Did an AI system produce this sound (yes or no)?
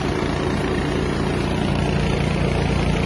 yes